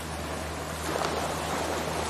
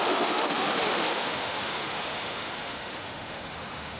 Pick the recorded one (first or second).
first